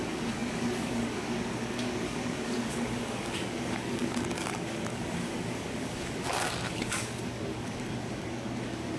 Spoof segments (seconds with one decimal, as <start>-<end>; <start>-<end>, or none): 0.0-9.0